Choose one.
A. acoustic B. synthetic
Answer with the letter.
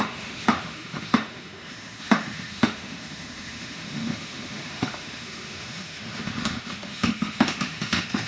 B